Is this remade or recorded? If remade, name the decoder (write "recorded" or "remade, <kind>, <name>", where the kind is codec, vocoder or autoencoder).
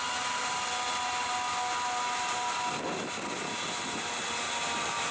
recorded